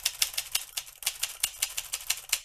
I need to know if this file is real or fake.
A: real